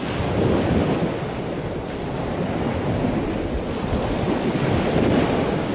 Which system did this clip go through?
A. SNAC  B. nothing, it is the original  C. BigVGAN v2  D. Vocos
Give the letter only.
B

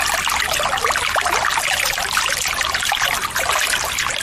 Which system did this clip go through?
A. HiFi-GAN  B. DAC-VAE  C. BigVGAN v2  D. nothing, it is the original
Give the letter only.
D